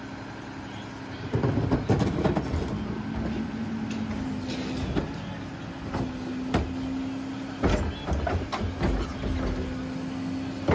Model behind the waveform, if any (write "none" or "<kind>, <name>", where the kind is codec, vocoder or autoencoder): none